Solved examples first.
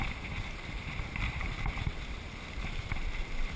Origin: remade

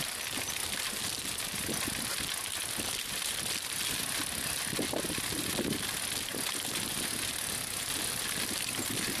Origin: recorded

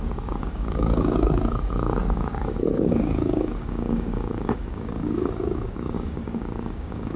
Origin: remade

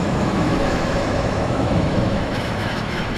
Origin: remade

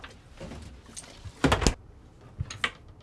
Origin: recorded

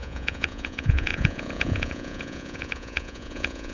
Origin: remade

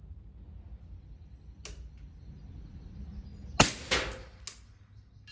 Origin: recorded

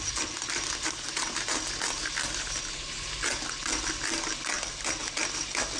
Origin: recorded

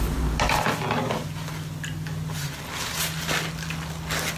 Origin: recorded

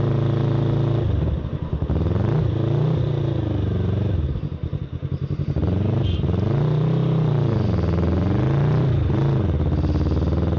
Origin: recorded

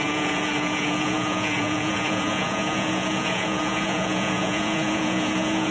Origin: remade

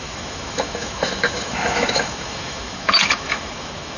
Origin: remade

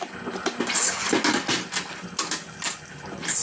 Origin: recorded